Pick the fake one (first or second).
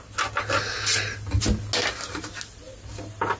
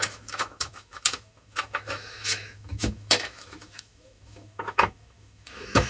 second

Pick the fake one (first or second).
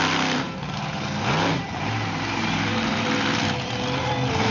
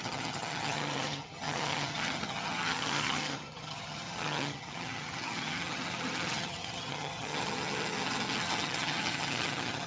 second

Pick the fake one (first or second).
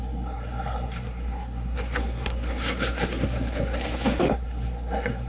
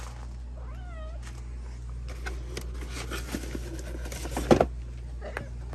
first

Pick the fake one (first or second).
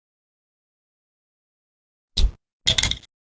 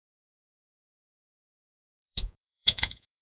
second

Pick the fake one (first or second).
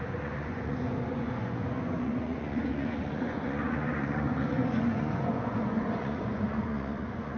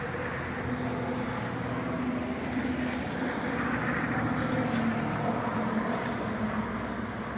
first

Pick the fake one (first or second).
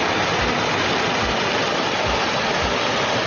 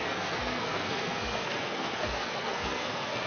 second